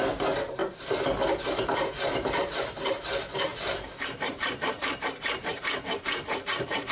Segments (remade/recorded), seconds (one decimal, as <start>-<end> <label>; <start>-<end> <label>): 0.0-0.6 remade; 0.6-1.3 recorded; 1.3-6.9 remade